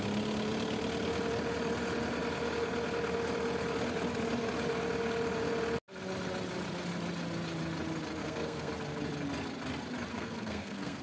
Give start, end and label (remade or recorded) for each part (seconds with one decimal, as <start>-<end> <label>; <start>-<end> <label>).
0.0-8.2 recorded; 8.2-8.7 remade; 8.7-10.1 recorded; 10.1-11.0 remade